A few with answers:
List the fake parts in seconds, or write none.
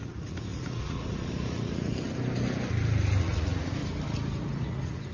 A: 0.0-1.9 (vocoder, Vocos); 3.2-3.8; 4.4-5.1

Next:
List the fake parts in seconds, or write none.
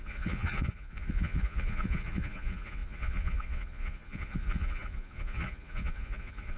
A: 0.0-6.6 (vocoder, Vocos)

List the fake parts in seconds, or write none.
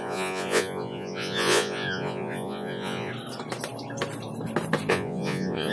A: 0.0-3.1 (vocoder, Vocos); 4.9-5.7